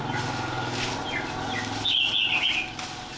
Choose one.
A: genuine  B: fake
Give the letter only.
A